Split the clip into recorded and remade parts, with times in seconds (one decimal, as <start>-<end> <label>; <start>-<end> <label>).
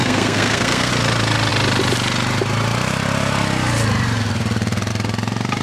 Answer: 0.0-0.9 remade; 0.9-5.6 recorded